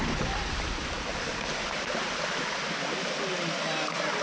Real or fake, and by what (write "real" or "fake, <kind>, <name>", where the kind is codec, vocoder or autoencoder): real